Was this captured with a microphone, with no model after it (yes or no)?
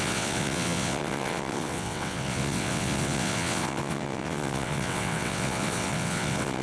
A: no